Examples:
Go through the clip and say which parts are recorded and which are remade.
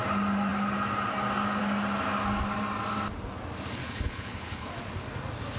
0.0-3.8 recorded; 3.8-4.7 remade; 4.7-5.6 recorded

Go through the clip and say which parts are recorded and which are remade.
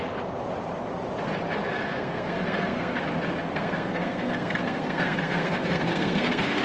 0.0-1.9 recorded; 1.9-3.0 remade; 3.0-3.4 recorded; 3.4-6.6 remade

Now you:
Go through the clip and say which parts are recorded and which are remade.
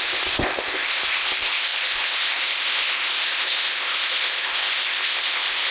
0.0-5.7 remade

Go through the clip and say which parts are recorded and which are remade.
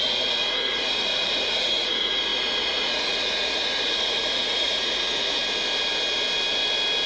0.0-5.4 remade; 5.4-7.1 recorded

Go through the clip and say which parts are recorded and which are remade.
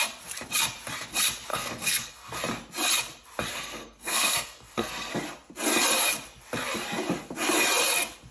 0.0-1.5 recorded; 1.5-2.4 remade; 2.4-3.5 recorded; 3.5-5.1 remade; 5.1-8.3 recorded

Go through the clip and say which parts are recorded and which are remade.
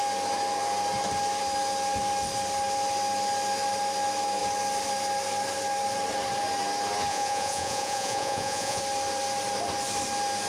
0.0-7.1 recorded; 7.1-8.8 remade; 8.8-10.5 recorded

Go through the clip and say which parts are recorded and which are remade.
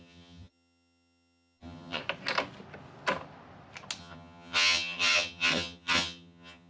0.0-2.0 remade; 2.0-4.0 recorded; 4.0-6.7 remade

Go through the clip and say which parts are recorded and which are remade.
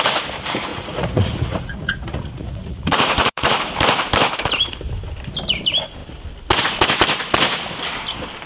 0.0-0.7 recorded; 0.7-3.6 remade; 3.6-8.5 recorded